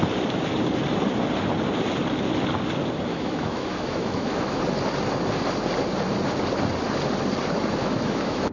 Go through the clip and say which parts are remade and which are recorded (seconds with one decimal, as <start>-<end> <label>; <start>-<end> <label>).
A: 0.0-3.1 recorded; 3.1-4.6 remade; 4.6-7.8 recorded; 7.8-8.5 remade